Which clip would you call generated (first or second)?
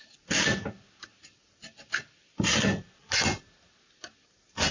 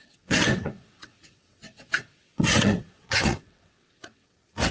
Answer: second